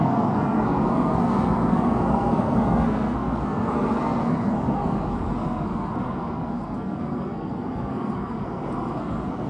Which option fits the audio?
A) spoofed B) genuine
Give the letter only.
A